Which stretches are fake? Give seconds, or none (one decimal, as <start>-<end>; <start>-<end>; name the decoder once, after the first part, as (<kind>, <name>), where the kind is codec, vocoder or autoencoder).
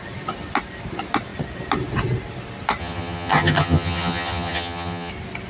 2.8-5.1 (vocoder, HiFi-GAN)